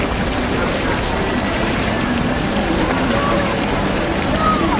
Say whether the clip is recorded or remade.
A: remade